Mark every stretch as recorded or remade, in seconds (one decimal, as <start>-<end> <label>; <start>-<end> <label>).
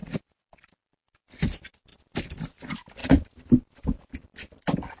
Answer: 0.0-5.0 recorded